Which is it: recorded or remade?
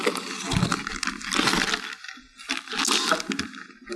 recorded